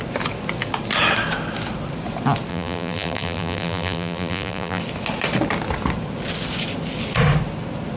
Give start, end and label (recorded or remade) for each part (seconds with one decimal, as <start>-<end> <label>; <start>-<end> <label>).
0.0-2.5 recorded; 2.5-4.8 remade; 4.8-8.0 recorded